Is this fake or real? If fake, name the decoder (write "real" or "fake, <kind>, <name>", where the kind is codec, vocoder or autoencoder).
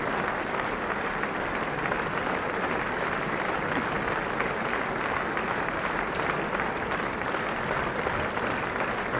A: fake, vocoder, BigVGAN v2